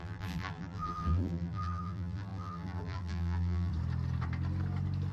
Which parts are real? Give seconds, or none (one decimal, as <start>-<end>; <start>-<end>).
3.7-5.1